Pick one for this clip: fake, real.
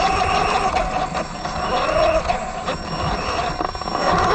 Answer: real